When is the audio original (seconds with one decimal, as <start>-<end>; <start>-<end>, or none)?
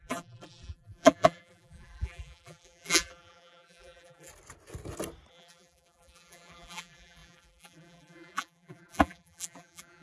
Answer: 4.3-5.3